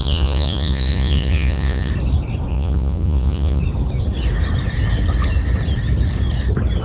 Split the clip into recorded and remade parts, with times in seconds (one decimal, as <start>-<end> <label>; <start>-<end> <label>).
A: 0.0-1.9 remade; 1.9-2.5 recorded; 2.5-3.6 remade; 3.6-6.8 recorded